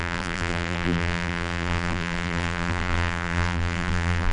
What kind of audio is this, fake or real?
fake